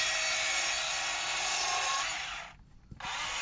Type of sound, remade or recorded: recorded